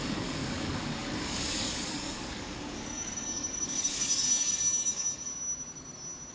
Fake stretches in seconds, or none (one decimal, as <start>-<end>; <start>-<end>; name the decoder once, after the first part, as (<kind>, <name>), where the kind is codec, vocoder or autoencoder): 0.0-5.3 (codec, DAC)